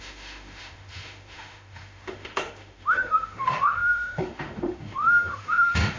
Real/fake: fake